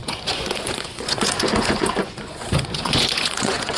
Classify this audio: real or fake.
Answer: fake